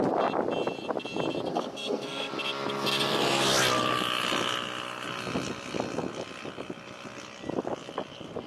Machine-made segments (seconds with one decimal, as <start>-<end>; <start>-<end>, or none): 1.5-2.3